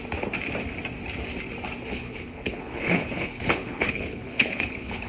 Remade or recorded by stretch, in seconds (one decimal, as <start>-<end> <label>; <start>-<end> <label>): 0.0-1.9 recorded; 1.9-5.1 remade